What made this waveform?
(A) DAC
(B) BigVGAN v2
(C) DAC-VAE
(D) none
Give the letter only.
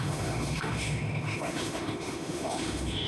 C